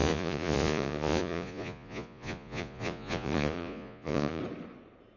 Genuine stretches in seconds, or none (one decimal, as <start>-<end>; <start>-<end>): 4.4-5.2